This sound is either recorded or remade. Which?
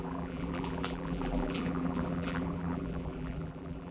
remade